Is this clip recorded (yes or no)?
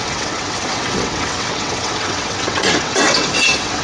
no